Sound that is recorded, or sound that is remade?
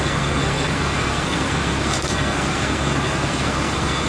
remade